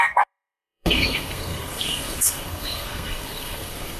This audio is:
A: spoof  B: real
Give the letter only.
A